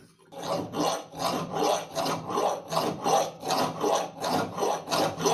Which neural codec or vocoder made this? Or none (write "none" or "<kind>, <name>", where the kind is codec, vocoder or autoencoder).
none